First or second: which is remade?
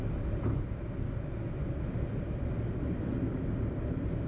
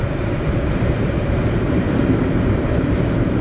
second